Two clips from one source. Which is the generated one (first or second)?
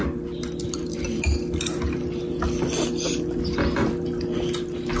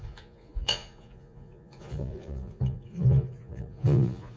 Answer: second